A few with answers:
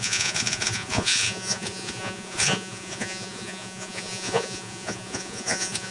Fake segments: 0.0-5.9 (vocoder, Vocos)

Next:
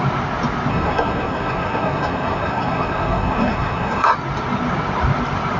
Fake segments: 0.7-4.1 (codec, SNAC)

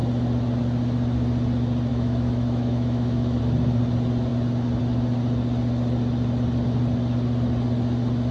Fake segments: 1.9-3.4 (autoencoder, DAC-VAE)

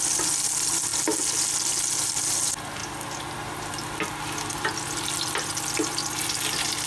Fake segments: none

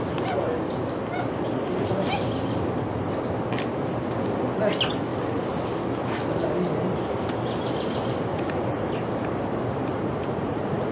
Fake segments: 8.3-8.9 (vocoder, Vocos); 9.9-10.9

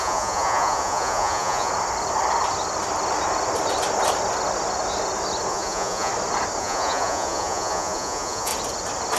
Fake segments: 0.0-1.7 (vocoder, Vocos); 5.5-6.1; 6.6-8.5

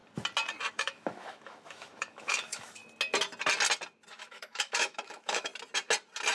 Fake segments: 0.7-2.8 (autoencoder, DAC-VAE); 4.1-5.5